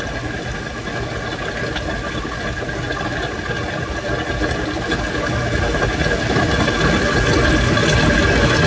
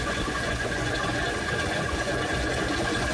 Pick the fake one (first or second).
second